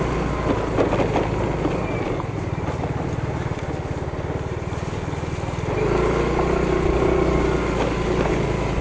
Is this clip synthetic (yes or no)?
no